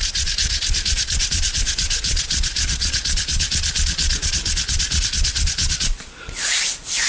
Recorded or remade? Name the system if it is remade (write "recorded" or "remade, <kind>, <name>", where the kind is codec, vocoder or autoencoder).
remade, vocoder, Vocos